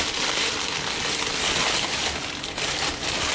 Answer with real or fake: real